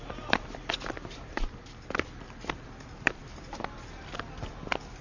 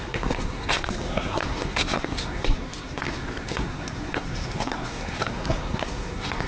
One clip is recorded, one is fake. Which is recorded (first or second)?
first